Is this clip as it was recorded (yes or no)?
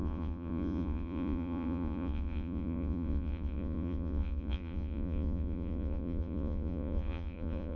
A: no